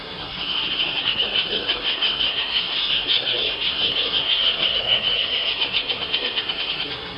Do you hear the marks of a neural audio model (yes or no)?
yes